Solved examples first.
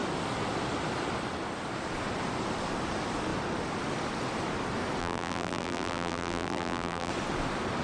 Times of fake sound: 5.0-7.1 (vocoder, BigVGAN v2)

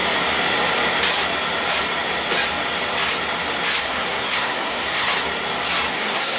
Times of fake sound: 3.8-5.1 (codec, SNAC); 5.9-6.4

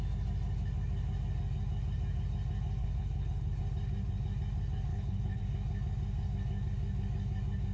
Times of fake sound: 2.8-3.6 (codec, HILCodec); 4.9-5.4

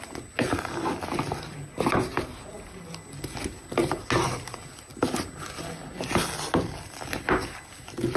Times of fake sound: none